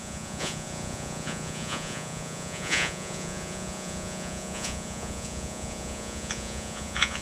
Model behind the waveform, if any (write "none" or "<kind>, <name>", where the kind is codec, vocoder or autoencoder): vocoder, Vocos